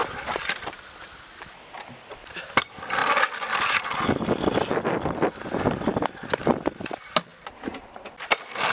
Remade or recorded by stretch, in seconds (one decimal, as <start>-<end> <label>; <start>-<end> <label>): 0.0-2.0 remade; 2.0-8.7 recorded